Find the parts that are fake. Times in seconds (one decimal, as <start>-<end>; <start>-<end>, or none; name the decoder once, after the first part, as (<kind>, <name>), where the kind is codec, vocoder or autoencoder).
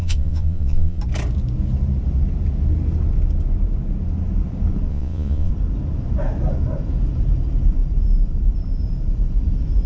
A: 0.0-1.0 (vocoder, Vocos); 4.9-5.5